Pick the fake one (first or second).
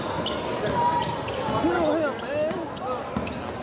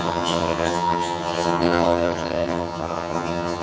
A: second